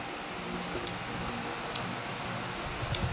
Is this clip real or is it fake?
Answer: real